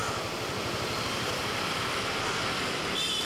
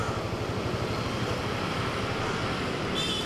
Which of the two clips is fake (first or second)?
first